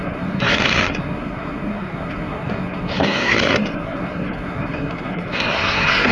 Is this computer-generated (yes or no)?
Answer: yes